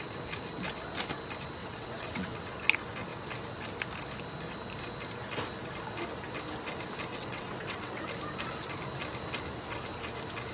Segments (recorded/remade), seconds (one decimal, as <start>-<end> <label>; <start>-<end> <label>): 0.0-1.6 recorded; 1.6-2.5 remade; 2.5-7.1 recorded; 7.1-8.1 remade; 8.1-10.5 recorded

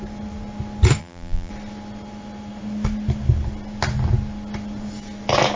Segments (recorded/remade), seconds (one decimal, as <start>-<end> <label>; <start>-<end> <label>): 0.0-1.0 recorded; 1.0-1.5 remade; 1.5-5.6 recorded

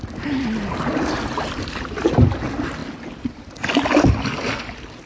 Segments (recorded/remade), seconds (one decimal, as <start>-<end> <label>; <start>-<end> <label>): 0.0-5.1 recorded

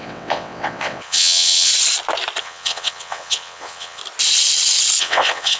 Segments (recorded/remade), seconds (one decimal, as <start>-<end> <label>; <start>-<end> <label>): 0.0-1.7 remade; 1.7-2.4 recorded; 2.4-4.0 remade; 4.0-5.0 recorded; 5.0-5.6 remade

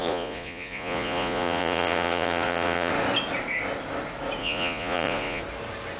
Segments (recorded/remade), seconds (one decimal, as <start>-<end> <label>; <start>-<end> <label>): 0.0-2.9 remade; 2.9-4.4 recorded; 4.4-5.4 remade; 5.4-6.0 recorded

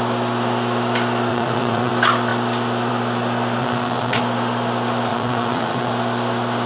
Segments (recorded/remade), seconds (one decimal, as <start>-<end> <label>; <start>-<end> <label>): 0.0-1.3 recorded; 1.3-1.9 remade; 1.9-3.6 recorded; 3.6-4.2 remade; 4.2-5.1 recorded; 5.1-5.9 remade; 5.9-6.7 recorded

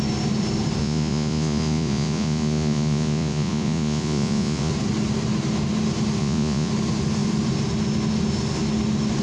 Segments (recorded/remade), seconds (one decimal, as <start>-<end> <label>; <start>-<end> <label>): 0.0-0.8 recorded; 0.8-4.7 remade; 4.7-6.2 recorded; 6.2-6.7 remade; 6.7-9.2 recorded